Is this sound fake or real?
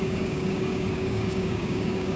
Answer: fake